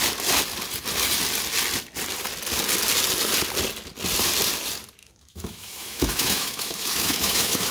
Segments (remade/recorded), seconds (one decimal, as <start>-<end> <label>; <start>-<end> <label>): 0.0-5.0 recorded; 5.0-7.7 remade